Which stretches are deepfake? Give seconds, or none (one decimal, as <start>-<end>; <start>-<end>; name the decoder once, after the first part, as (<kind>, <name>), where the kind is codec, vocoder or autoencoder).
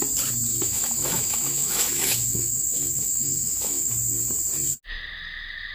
0.5-3.9 (autoencoder, DAC-VAE)